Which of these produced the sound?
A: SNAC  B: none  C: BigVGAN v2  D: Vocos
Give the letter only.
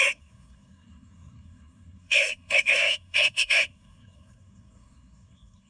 A